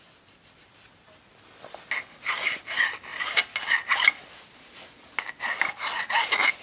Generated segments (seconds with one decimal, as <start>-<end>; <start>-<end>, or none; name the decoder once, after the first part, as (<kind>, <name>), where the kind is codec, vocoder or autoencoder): none